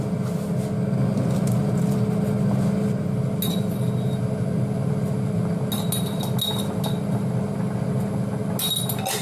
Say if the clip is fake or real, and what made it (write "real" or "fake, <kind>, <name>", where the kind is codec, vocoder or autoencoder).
real